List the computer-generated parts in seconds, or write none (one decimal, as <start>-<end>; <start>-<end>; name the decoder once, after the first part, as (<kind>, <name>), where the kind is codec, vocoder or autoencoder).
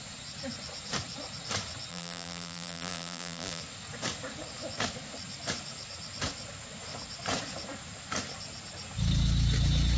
1.9-3.6 (vocoder, BigVGAN v2)